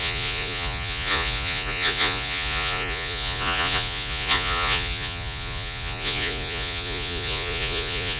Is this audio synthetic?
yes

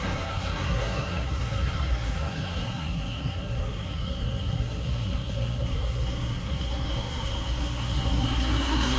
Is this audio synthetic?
yes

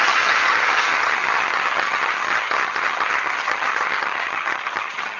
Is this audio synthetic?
yes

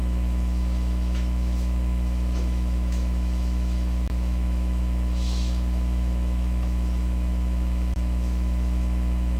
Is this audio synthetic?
yes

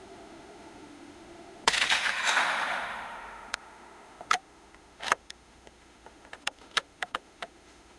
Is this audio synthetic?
yes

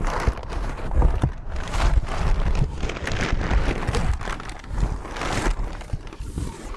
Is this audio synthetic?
no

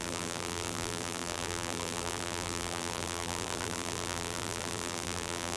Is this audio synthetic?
yes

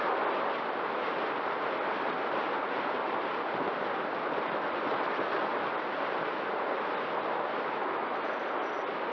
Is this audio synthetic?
no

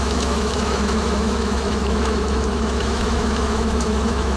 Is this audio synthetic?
yes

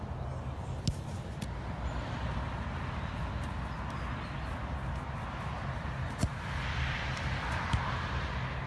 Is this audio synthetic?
no